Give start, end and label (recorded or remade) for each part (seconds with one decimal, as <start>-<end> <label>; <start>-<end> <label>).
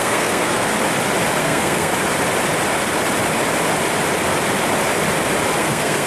0.0-0.7 remade; 0.7-1.4 recorded; 1.4-1.9 remade; 1.9-5.6 recorded; 5.6-6.1 remade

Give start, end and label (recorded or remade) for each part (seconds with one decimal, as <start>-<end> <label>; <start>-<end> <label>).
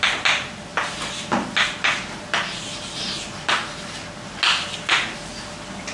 0.0-5.9 recorded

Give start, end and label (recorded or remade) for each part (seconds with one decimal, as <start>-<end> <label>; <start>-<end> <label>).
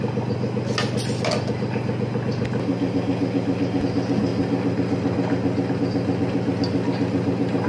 0.0-7.7 recorded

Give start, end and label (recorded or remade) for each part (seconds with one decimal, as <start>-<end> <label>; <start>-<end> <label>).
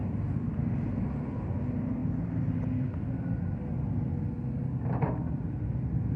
0.0-6.2 recorded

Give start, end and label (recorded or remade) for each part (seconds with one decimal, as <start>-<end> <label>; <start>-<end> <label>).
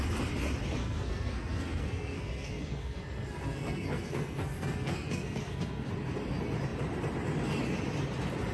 0.0-0.8 recorded; 0.8-5.9 remade; 5.9-8.5 recorded